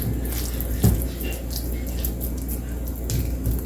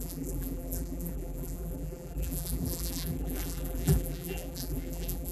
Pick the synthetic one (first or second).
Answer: second